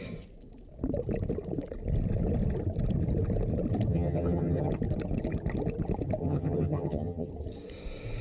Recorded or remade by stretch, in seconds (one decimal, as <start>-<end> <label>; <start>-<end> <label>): 0.0-3.9 recorded; 3.9-4.7 remade; 4.7-6.2 recorded; 6.2-7.3 remade; 7.3-8.2 recorded